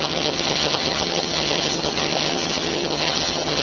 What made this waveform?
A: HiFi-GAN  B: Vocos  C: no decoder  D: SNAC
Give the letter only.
A